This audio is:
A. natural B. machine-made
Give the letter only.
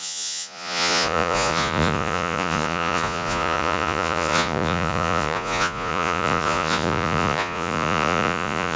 B